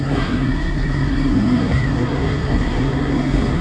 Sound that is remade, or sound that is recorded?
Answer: remade